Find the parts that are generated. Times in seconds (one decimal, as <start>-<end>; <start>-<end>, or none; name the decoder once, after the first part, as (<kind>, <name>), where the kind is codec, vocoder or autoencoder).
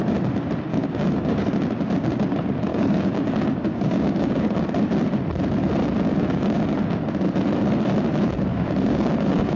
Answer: 0.7-1.5 (codec, DAC); 2.7-4.7; 6.1-7.1; 8.5-9.6